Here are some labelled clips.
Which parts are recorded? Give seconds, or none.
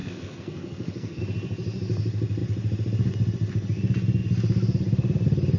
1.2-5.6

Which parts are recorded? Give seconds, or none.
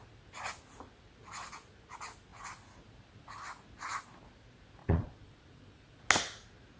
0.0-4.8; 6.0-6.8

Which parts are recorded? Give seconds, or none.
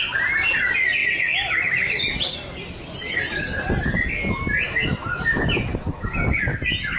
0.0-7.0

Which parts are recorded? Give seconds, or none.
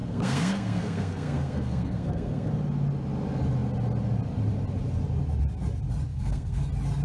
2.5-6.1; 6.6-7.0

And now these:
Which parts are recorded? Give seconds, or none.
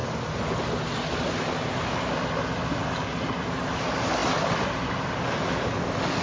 0.0-6.2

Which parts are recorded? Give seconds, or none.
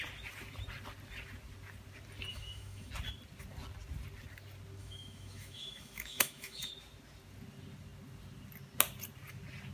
0.0-2.3; 2.9-4.8; 6.7-9.7